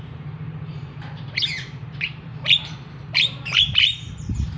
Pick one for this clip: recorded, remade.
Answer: remade